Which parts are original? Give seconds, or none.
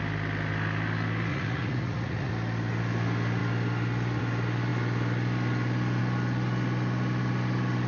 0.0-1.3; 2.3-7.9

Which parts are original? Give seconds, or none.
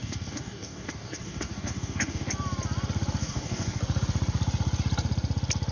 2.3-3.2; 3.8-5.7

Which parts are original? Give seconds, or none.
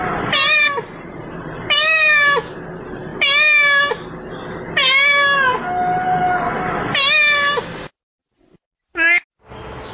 0.0-9.9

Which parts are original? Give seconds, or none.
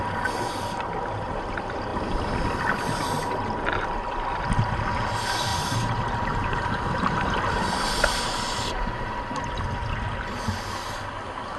0.0-5.5; 9.6-11.6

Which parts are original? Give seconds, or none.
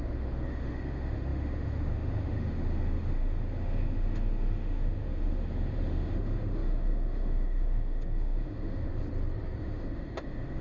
8.9-9.6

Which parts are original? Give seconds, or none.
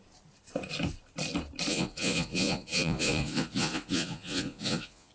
0.0-1.7